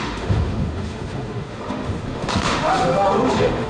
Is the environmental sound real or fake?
fake